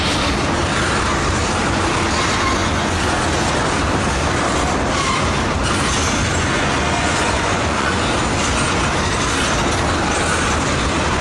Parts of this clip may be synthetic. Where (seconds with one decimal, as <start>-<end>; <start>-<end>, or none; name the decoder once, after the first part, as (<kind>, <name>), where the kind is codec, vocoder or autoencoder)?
2.6-3.2 (vocoder, Vocos); 6.3-8.0